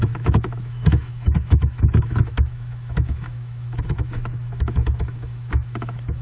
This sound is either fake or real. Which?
fake